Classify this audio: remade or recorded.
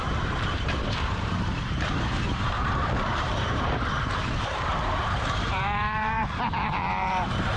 remade